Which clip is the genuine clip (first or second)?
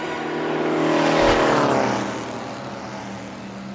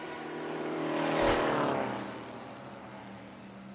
first